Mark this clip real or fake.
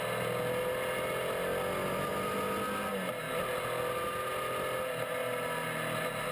real